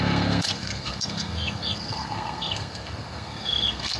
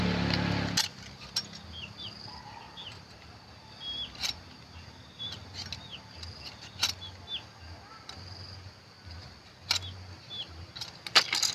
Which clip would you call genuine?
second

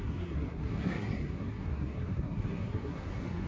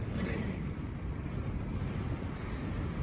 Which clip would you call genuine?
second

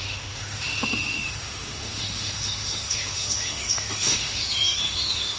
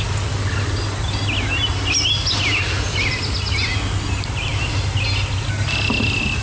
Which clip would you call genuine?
second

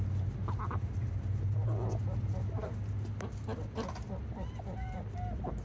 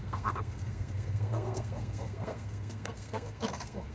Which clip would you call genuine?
first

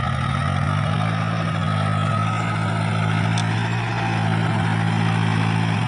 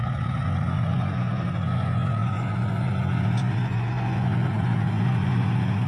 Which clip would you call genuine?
first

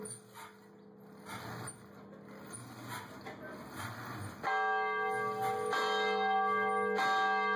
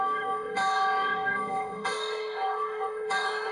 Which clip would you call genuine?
first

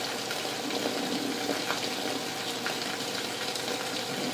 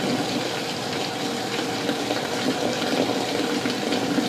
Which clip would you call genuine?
first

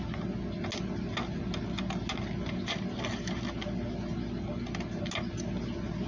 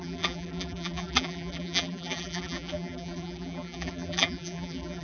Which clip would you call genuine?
first